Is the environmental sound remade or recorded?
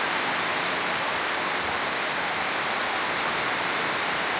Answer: recorded